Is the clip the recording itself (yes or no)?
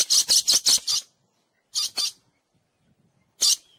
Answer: yes